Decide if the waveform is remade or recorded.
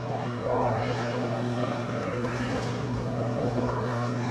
remade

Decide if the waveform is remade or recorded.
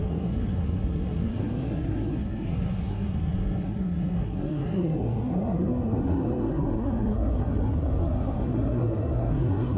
remade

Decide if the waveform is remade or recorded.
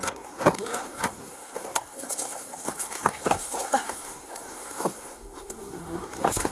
remade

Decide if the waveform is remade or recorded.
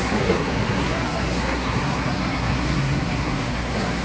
remade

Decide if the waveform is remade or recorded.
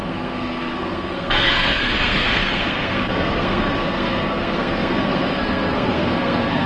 remade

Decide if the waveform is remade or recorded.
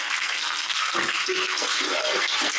remade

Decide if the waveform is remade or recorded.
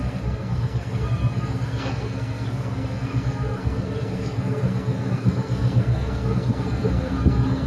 remade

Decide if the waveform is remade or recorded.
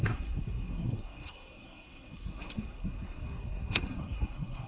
remade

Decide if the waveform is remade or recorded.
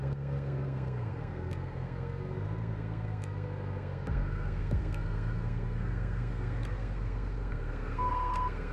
remade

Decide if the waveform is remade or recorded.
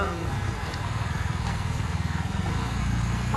remade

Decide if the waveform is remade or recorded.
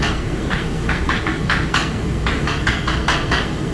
remade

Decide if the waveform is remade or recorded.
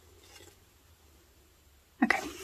recorded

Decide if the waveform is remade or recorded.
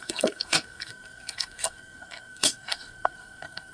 remade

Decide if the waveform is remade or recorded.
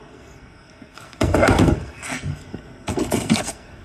remade